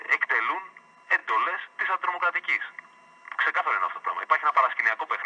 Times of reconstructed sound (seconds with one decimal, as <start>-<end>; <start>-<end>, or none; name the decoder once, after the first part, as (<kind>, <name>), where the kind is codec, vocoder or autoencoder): none